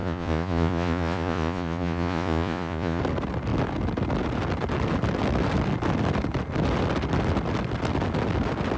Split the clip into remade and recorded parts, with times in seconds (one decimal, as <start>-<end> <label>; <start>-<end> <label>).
0.0-3.0 remade; 3.0-8.8 recorded